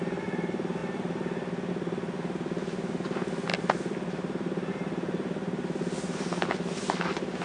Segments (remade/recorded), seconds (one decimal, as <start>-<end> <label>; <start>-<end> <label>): 0.0-7.4 recorded